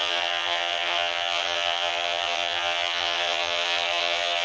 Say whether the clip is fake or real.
fake